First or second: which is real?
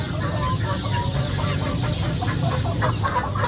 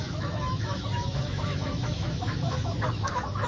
first